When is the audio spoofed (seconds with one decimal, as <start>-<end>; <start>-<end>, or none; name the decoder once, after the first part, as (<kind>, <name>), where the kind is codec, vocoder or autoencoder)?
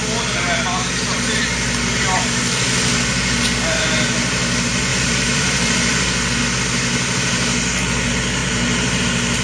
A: 4.9-6.0 (vocoder, BigVGAN v2); 8.4-9.0